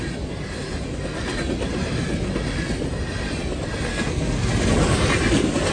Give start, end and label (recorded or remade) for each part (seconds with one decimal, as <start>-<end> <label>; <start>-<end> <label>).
0.0-3.9 recorded; 3.9-4.5 remade; 4.5-5.7 recorded